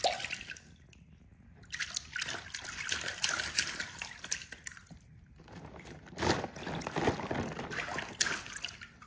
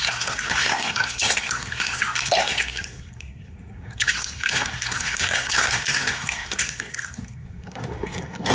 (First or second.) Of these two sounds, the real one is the first